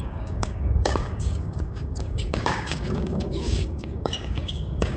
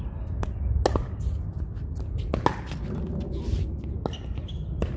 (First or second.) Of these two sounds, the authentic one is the second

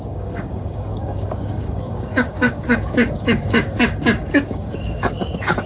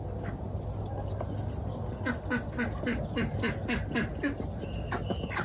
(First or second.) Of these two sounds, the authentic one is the second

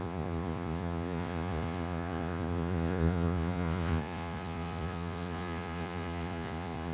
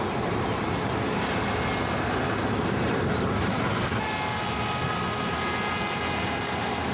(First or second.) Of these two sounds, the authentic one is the second